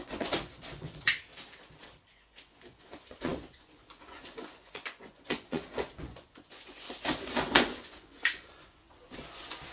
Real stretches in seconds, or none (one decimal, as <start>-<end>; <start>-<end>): 1.1-2.1